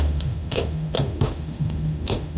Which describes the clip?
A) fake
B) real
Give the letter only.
A